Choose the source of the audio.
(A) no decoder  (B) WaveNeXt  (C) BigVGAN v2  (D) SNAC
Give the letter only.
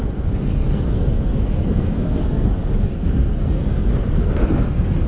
D